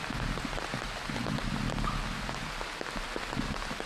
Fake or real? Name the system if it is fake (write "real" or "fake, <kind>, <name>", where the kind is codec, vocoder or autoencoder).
real